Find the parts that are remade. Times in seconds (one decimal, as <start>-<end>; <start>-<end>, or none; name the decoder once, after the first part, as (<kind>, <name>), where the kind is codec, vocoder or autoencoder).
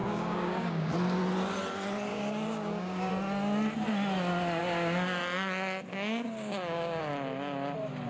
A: 0.0-0.9 (codec, DAC); 2.1-3.1; 5.9-7.0